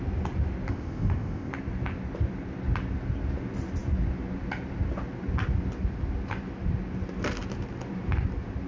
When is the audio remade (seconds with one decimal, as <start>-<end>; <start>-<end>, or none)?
0.7-1.5